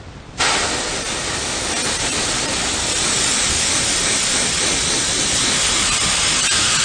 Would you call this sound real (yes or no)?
yes